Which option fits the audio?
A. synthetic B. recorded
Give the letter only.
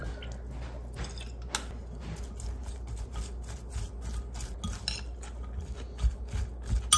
B